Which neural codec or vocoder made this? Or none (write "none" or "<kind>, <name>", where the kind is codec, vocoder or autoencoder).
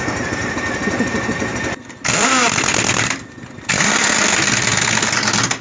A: none